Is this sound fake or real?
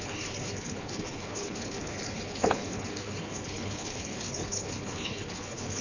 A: fake